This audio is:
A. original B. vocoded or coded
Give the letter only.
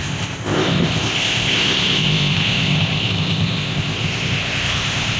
B